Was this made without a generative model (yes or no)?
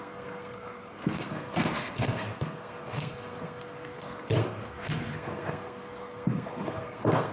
no